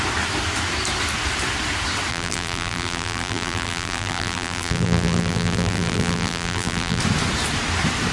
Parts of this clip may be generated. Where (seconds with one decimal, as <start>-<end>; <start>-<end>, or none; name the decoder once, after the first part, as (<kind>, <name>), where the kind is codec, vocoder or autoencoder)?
2.1-7.0 (vocoder, BigVGAN v2)